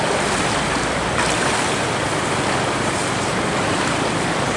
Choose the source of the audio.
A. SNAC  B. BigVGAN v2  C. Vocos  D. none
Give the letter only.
B